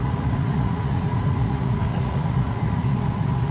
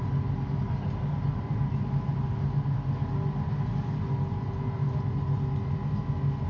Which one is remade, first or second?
first